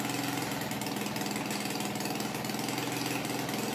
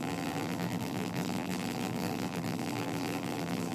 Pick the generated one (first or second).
second